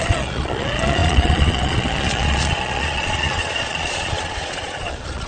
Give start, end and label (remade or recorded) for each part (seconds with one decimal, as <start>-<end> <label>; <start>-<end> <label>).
0.0-5.3 remade

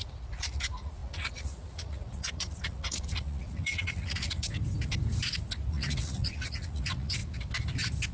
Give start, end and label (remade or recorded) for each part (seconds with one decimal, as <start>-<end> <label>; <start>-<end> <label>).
0.0-4.5 remade; 4.5-5.7 recorded; 5.7-7.2 remade; 7.2-8.1 recorded